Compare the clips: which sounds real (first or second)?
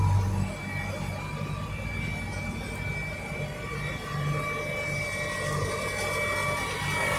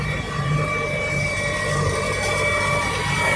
first